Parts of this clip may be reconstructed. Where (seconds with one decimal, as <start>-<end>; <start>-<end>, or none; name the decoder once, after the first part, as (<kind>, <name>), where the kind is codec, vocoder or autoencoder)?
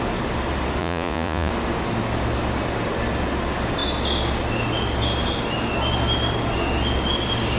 0.8-1.5 (vocoder, Vocos)